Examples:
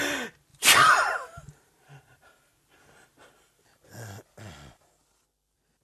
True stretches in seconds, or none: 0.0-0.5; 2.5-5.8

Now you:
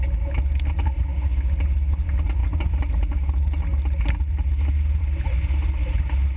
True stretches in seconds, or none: 0.0-6.4